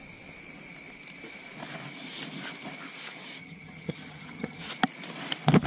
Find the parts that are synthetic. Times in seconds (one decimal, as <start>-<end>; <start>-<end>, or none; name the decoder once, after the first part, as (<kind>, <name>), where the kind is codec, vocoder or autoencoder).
3.4-4.7 (vocoder, HiFi-GAN)